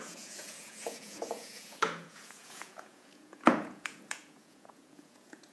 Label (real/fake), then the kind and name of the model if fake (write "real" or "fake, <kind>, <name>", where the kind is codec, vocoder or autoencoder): fake, vocoder, Vocos